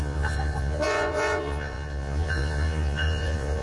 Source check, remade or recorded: remade